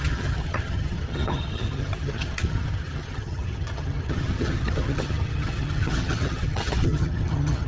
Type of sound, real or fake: fake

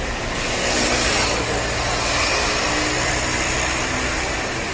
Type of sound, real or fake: real